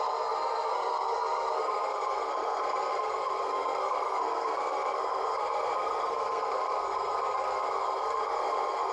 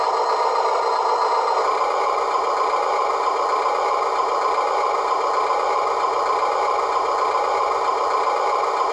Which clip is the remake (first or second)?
first